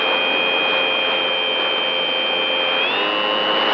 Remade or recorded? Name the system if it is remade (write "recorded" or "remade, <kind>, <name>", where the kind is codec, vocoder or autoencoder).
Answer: recorded